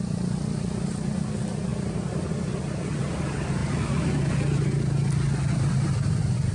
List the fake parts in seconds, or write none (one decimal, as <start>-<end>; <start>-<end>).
1.7-2.3